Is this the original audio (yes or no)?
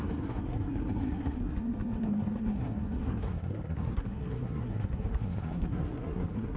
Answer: no